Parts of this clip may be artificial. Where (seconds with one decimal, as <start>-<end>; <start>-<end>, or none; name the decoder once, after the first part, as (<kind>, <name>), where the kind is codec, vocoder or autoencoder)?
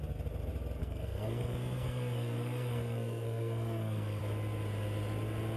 0.8-4.2 (codec, SNAC)